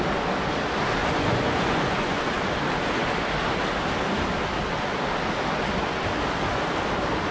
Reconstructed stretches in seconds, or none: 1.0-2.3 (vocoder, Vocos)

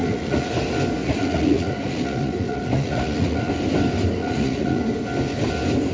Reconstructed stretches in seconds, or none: 0.0-0.5 (vocoder, Vocos); 1.0-3.5; 4.2-4.8

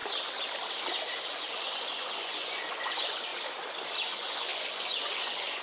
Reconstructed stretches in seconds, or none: 1.3-3.3 (vocoder, Vocos); 4.0-5.6

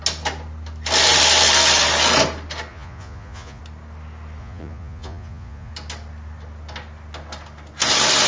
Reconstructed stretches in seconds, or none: 2.7-3.6 (vocoder, Vocos); 4.4-5.7

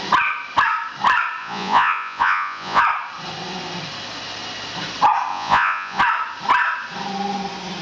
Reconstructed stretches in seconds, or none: 1.4-2.8 (vocoder, Vocos); 5.3-6.0

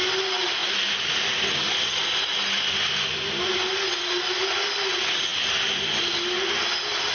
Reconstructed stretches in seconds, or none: none

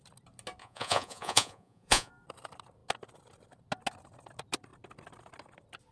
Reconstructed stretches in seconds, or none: 0.6-2.1 (vocoder, Vocos)

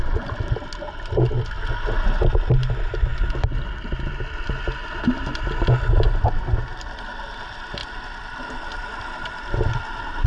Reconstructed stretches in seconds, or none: none